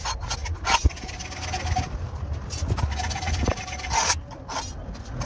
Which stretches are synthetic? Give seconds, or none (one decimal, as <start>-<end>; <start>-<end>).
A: none